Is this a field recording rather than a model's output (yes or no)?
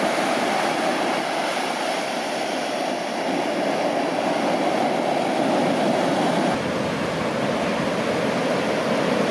yes